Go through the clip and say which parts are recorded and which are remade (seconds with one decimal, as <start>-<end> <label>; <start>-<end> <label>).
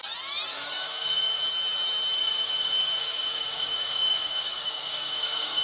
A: 0.0-0.5 recorded; 0.5-1.4 remade; 1.4-2.2 recorded; 2.2-5.6 remade